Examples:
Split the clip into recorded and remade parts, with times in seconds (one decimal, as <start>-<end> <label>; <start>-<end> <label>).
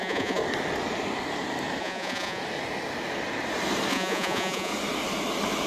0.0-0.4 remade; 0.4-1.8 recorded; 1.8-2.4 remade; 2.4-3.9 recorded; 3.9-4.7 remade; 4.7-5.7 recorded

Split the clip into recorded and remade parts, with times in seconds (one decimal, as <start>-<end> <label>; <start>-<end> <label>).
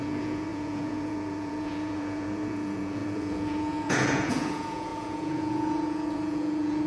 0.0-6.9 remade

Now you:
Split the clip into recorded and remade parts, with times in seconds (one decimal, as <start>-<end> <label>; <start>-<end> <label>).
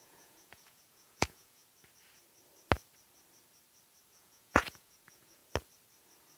0.0-1.6 remade; 1.6-4.1 recorded; 4.1-5.4 remade; 5.4-6.4 recorded